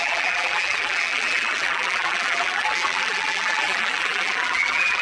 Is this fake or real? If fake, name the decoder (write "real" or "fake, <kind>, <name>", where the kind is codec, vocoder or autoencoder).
fake, vocoder, BigVGAN v2